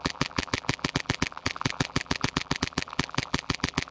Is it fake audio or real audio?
fake